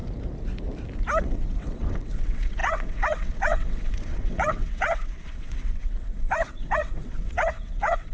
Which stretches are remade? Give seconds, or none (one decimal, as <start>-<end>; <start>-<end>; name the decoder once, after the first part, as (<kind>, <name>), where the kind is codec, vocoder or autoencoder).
1.2-8.1 (vocoder, WaveNeXt)